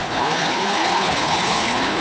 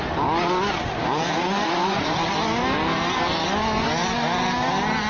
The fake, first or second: first